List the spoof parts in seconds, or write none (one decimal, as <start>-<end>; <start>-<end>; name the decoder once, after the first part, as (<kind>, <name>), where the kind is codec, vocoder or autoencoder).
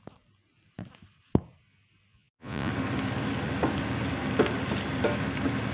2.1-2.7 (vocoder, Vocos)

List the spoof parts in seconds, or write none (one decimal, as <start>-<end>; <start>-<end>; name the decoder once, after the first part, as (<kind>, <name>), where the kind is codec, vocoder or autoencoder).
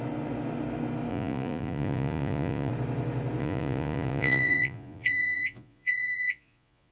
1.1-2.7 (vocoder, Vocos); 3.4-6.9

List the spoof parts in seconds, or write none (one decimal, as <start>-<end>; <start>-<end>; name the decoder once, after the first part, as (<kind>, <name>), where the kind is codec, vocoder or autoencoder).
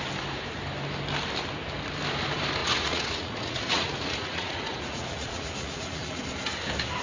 2.6-6.2 (vocoder, Vocos)